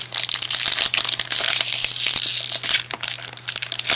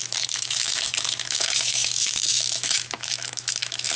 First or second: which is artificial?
second